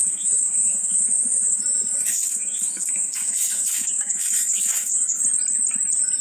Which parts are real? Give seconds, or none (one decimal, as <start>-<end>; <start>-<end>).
1.6-2.1; 5.2-6.2